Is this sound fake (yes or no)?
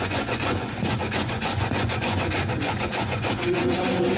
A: yes